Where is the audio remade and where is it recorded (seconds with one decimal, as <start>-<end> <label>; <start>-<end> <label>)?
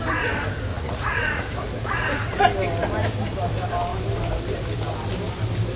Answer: 0.0-0.7 recorded; 0.7-1.5 remade; 1.5-5.8 recorded